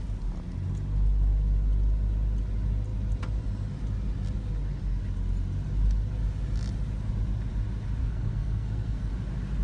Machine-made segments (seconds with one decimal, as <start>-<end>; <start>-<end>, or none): 8.0-9.1